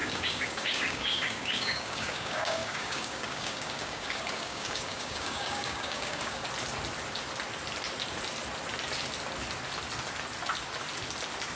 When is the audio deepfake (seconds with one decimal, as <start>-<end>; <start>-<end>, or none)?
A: 0.0-6.4